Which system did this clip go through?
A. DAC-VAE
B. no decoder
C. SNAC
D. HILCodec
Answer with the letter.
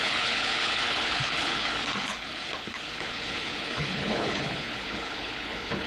D